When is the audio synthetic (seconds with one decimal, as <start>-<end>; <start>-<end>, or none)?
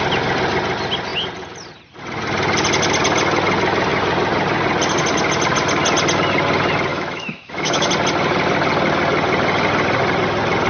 6.9-7.9